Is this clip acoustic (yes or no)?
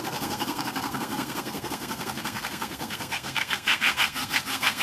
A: no